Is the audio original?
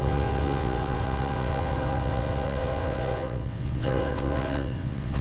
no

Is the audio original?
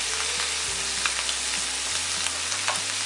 yes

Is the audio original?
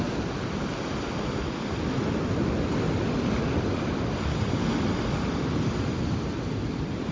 yes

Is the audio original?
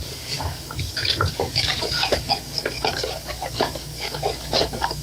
no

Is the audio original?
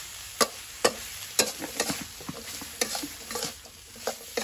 yes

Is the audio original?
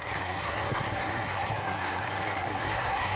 no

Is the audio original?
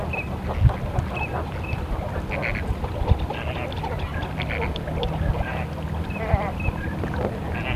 yes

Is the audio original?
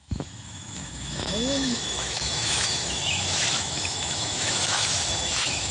no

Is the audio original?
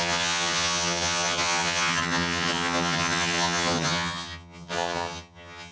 no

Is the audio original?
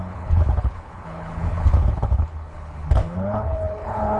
no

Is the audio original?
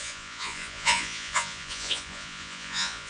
no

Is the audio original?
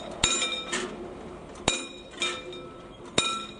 yes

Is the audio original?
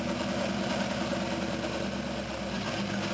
yes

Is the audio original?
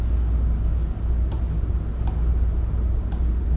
yes